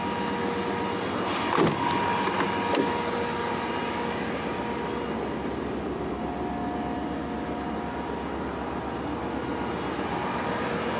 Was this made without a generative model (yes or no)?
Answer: yes